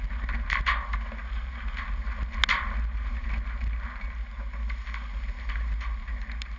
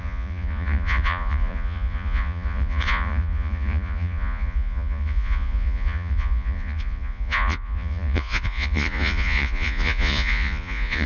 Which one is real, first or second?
first